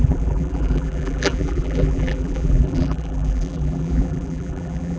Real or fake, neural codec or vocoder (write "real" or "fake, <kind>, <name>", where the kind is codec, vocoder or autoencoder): fake, vocoder, BigVGAN v2